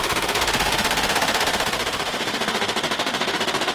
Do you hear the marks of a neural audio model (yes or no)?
yes